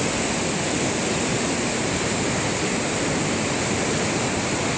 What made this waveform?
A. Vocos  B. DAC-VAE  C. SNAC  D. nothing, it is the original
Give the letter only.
D